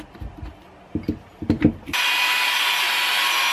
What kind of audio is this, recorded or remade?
recorded